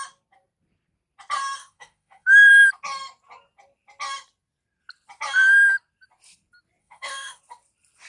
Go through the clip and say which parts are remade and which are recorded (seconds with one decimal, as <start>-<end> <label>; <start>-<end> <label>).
0.0-1.6 recorded; 1.6-2.5 remade; 2.5-6.8 recorded; 6.8-7.4 remade; 7.4-8.1 recorded